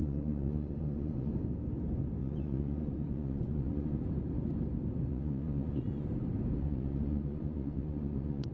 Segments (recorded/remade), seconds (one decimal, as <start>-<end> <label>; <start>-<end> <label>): 0.0-1.3 remade; 1.3-2.2 recorded; 2.2-4.0 remade; 4.0-5.1 recorded; 5.1-6.1 remade; 6.1-6.6 recorded; 6.6-8.5 remade